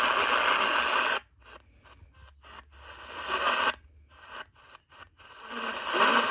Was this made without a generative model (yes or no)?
yes